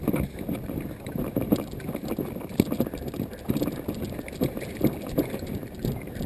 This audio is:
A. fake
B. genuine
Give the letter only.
B